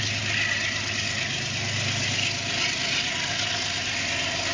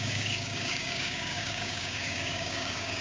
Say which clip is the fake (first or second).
second